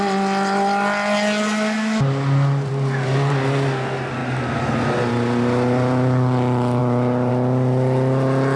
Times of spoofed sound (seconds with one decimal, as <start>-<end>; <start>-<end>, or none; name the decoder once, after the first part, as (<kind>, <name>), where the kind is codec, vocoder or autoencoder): none